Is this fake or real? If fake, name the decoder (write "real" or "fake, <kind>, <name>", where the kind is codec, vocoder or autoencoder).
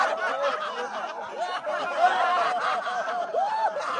fake, vocoder, BigVGAN v2